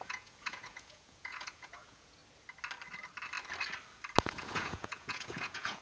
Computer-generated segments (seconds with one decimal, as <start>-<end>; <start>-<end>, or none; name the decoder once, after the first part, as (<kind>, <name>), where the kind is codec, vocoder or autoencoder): 0.0-2.2 (vocoder, Vocos); 4.2-5.8

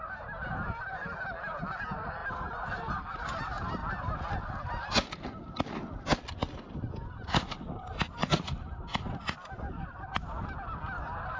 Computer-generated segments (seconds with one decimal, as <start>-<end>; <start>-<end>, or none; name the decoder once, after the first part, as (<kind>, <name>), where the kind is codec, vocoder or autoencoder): none

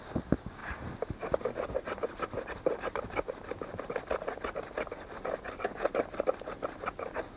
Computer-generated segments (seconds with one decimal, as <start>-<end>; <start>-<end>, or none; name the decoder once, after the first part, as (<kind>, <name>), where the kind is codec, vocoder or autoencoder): none

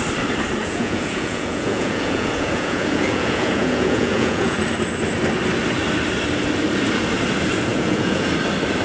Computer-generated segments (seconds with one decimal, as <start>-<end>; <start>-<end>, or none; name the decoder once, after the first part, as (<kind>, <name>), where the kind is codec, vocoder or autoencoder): 0.6-4.6 (vocoder, Vocos); 7.7-8.3

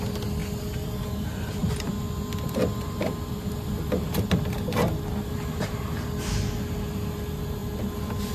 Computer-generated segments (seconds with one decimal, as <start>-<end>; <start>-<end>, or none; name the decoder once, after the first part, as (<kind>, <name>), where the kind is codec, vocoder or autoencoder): none